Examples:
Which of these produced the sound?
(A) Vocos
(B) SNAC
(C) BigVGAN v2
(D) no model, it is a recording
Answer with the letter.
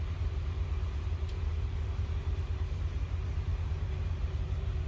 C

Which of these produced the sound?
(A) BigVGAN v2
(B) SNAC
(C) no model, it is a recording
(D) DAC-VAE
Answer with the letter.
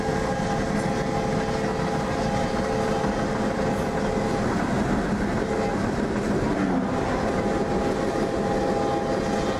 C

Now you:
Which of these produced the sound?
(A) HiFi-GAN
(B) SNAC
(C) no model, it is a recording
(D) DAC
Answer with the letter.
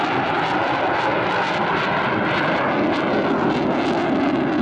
C